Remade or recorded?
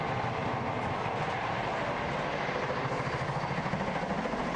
recorded